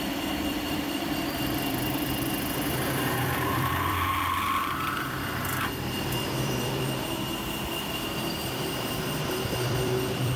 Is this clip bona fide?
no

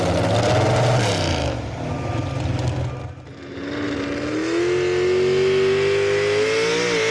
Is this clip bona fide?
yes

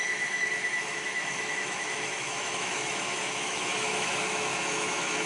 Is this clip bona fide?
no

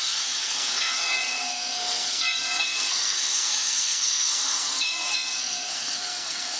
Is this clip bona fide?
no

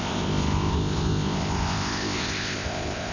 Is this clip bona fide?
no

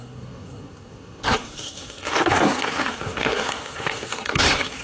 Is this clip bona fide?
no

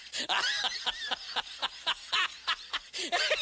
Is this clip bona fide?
yes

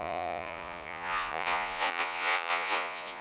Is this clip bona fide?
no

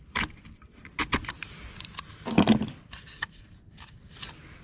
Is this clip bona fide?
yes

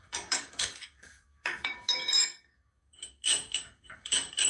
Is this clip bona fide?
no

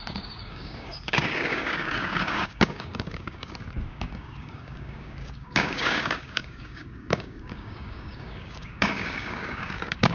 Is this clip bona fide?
no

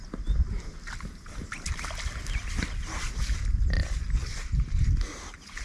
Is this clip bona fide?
yes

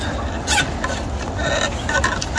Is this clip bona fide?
yes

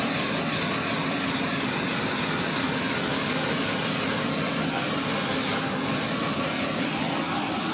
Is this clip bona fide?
yes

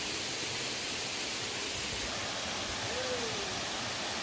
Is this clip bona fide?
yes